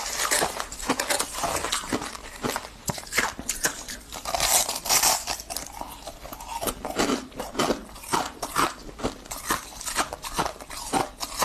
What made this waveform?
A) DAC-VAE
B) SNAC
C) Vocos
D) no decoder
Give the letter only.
D